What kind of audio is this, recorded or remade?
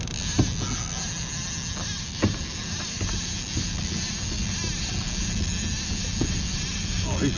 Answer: recorded